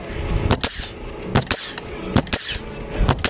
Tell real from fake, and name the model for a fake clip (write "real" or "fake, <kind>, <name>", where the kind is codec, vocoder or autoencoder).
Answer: real